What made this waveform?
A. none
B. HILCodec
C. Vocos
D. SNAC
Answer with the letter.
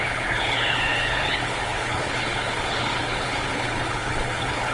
B